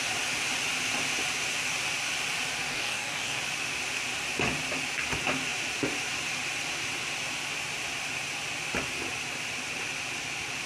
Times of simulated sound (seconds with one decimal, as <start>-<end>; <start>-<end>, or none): 2.7-3.4